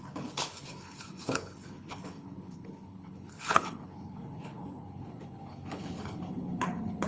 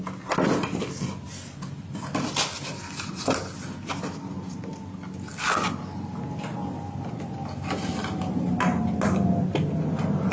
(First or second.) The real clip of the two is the second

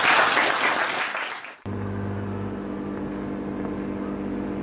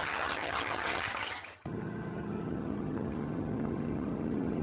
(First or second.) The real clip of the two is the first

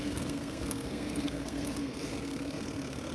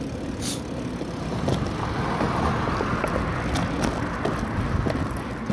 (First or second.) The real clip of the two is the second